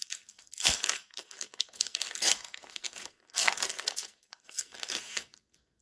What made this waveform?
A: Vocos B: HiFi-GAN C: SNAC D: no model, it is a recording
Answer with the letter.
C